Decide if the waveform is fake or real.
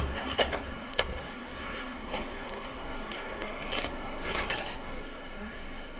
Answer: fake